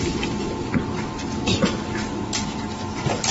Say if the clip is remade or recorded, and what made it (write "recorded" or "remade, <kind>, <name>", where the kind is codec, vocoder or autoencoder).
recorded